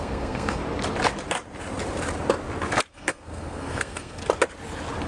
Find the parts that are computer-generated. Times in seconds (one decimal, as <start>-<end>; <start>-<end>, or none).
0.0-0.6; 2.9-4.2